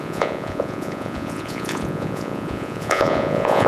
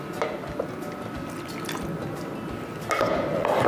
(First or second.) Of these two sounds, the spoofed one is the first